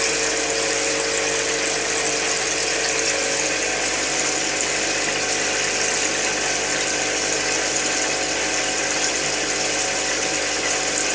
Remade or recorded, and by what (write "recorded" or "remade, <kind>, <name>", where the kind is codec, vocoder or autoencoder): recorded